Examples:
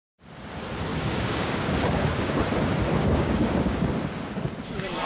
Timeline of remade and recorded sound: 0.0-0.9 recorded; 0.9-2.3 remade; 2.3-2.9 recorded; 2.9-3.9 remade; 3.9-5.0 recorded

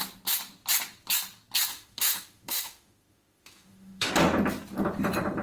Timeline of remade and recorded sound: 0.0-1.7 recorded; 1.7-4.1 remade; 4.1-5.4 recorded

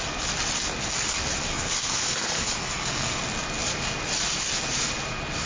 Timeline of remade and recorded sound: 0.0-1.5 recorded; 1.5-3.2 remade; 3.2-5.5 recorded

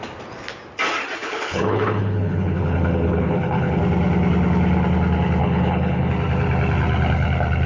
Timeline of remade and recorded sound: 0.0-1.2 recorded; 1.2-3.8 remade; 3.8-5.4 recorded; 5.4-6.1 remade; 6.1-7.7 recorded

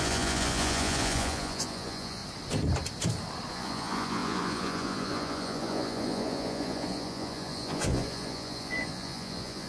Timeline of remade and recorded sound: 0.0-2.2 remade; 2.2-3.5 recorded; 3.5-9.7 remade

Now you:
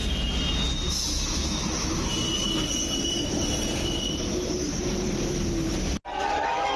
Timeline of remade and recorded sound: 0.0-0.9 recorded; 0.9-2.1 remade; 2.1-6.2 recorded; 6.2-6.8 remade